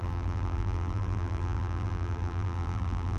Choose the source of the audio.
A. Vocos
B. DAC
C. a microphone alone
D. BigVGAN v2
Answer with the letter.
D